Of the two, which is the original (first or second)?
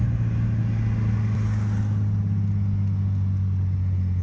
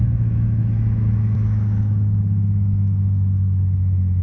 first